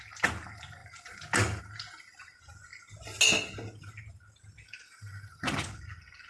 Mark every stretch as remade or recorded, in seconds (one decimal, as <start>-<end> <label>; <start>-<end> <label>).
0.0-6.3 recorded